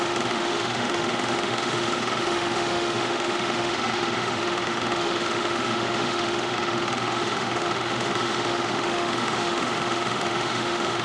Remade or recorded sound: remade